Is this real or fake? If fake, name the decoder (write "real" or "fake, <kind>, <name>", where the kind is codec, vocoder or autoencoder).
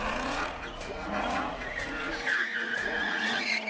fake, vocoder, Vocos